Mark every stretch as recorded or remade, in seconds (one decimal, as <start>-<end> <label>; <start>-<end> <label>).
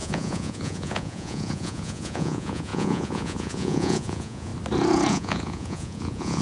0.0-4.5 remade; 4.5-5.1 recorded; 5.1-6.4 remade